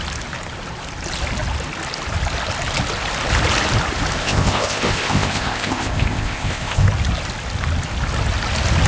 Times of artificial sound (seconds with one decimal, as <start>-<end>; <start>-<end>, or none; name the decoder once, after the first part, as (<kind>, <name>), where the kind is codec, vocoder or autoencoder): 4.2-6.9 (codec, ZipCodec)